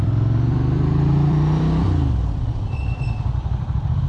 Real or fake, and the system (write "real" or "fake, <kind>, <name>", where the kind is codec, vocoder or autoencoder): fake, vocoder, BigVGAN v2